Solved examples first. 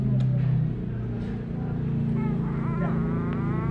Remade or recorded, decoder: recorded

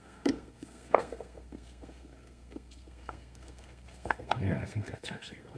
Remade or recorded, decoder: remade, codec, SNAC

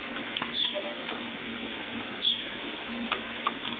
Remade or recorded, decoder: remade, codec, SNAC